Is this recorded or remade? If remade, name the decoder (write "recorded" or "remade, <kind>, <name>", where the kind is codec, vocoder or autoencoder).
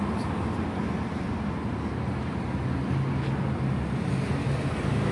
recorded